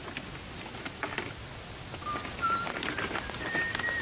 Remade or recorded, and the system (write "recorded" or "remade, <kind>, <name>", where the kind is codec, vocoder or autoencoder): recorded